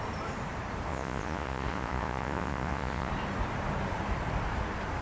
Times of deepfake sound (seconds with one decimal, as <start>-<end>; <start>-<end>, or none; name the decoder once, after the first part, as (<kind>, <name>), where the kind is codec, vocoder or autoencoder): 0.9-3.1 (vocoder, Vocos)